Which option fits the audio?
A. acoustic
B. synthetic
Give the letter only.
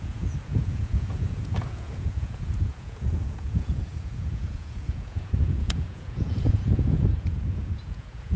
B